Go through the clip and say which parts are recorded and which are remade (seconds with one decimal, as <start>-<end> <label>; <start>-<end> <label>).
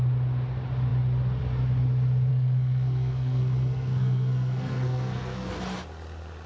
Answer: 0.0-2.3 recorded; 2.3-5.5 remade; 5.5-6.5 recorded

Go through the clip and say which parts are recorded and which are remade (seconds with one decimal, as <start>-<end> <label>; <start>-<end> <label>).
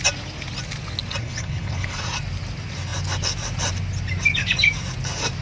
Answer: 0.0-1.2 recorded; 1.2-2.0 remade; 2.0-5.4 recorded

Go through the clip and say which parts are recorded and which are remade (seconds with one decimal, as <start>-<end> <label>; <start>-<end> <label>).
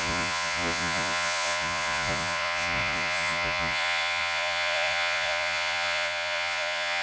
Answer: 0.0-7.0 remade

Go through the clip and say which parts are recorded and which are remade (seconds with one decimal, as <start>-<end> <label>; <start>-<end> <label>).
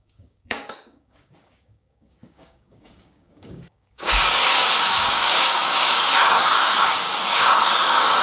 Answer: 0.0-8.2 remade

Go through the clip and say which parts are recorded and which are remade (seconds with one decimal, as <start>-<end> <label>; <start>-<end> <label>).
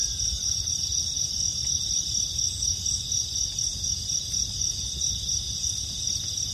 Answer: 0.0-1.2 remade; 1.2-3.7 recorded; 3.7-4.8 remade; 4.8-6.5 recorded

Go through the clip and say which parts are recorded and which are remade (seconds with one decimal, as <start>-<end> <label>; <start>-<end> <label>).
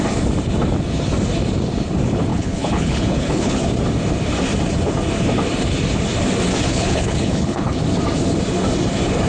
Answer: 0.0-2.3 recorded; 2.3-3.6 remade; 3.6-6.7 recorded; 6.7-7.8 remade; 7.8-9.3 recorded